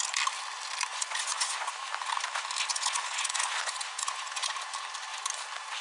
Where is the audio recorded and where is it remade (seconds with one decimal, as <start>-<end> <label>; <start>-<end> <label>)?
0.0-0.9 recorded; 0.9-1.7 remade; 1.7-2.7 recorded; 2.7-4.6 remade; 4.6-5.8 recorded